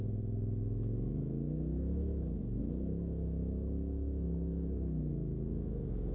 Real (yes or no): no